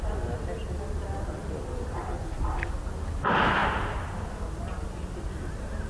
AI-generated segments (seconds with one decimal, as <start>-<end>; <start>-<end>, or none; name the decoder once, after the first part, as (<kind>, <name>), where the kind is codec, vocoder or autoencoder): none